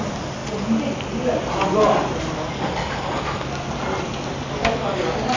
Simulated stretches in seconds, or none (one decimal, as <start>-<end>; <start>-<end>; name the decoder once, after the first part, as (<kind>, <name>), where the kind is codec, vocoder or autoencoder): none